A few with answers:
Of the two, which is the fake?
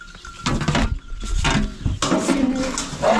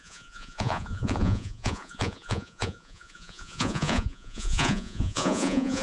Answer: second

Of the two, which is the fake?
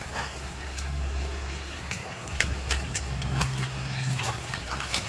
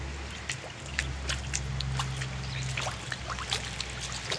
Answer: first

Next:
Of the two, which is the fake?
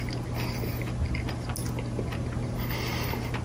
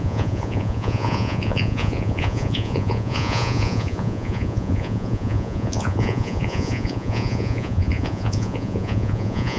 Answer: second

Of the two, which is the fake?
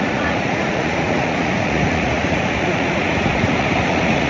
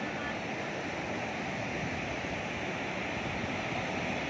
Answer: first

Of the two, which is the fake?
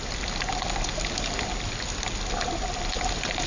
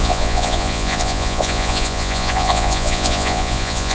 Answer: second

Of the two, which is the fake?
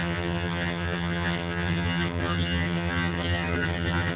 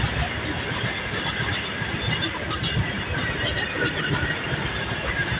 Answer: first